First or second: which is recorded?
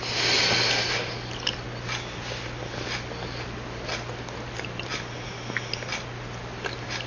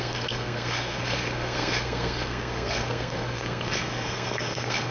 first